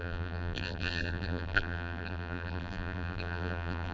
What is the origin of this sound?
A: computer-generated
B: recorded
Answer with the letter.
A